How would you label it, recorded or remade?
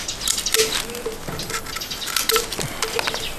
recorded